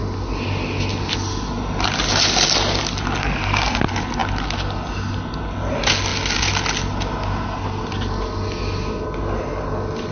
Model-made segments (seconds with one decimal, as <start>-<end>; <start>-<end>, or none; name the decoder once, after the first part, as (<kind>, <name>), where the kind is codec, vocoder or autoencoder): 3.2-3.8 (codec, SNAC)